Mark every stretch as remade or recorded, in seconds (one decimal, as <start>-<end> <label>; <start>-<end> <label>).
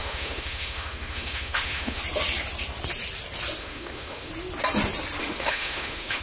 0.0-2.0 remade; 2.0-3.6 recorded; 3.6-4.3 remade; 4.3-5.2 recorded; 5.2-6.2 remade